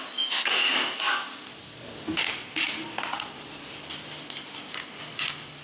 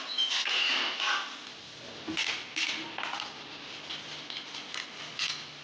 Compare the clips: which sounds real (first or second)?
second